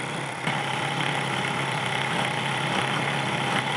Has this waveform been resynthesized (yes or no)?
no